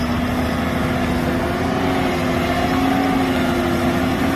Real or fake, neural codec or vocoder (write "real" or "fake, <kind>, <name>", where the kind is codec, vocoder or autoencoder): real